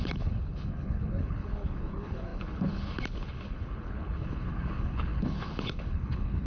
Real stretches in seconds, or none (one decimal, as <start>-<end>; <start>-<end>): none